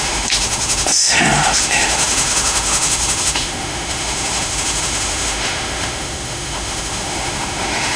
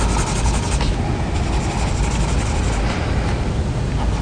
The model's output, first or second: first